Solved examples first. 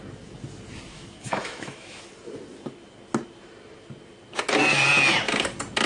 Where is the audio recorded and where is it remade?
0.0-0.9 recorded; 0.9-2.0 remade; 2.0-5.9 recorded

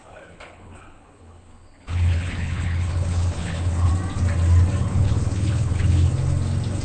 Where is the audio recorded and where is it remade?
0.0-3.9 remade; 3.9-4.8 recorded; 4.8-6.1 remade; 6.1-6.8 recorded

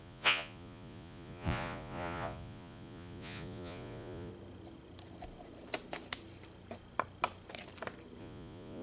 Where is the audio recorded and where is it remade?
0.0-4.3 remade; 4.3-8.2 recorded; 8.2-8.8 remade